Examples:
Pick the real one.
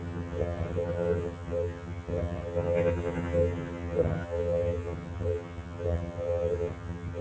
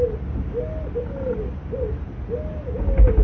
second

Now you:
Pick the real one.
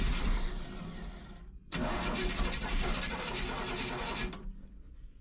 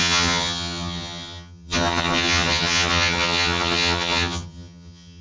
first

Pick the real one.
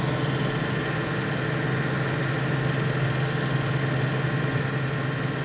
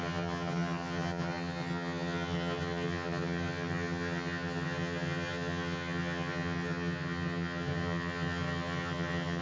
first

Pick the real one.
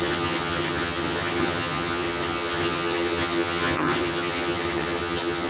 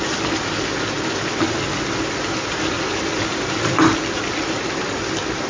second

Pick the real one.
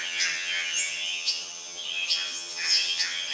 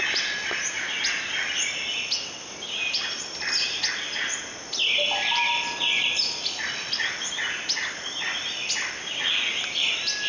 second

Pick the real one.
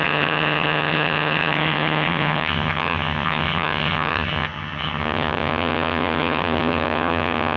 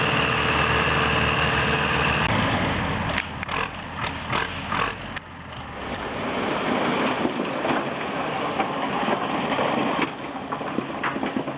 second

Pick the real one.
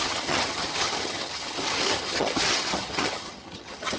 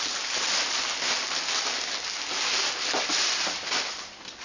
second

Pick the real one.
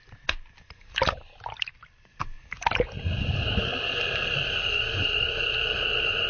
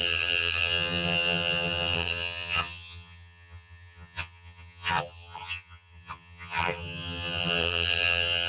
first